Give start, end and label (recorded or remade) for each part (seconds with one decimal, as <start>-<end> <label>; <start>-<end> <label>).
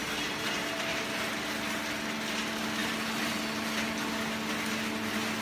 0.0-0.8 remade; 0.8-2.8 recorded; 2.8-3.9 remade; 3.9-5.4 recorded